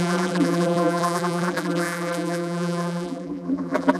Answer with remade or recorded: remade